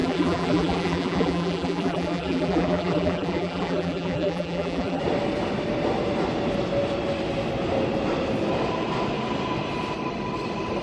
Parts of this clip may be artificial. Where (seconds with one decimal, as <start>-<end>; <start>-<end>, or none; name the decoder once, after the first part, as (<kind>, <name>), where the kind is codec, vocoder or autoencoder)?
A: 0.0-5.0 (vocoder, BigVGAN v2)